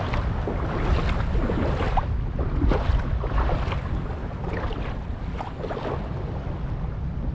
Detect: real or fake real